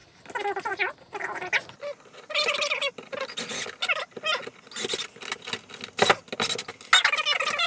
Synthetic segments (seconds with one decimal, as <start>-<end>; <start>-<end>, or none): none